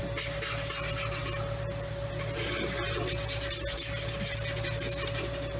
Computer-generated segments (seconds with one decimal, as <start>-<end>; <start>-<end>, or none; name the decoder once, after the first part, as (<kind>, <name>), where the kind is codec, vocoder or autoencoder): none